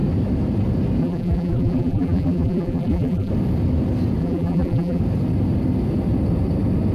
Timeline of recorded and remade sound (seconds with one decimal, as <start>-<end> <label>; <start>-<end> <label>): 0.0-1.0 recorded; 1.0-3.3 remade; 3.3-4.2 recorded; 4.2-5.0 remade; 5.0-6.9 recorded